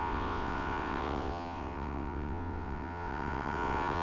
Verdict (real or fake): fake